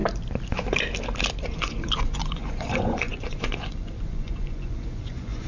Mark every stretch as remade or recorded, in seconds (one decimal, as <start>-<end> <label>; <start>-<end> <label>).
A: 0.0-1.4 recorded; 1.4-5.5 remade